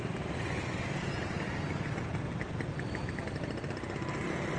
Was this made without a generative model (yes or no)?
yes